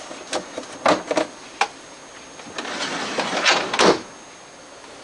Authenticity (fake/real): real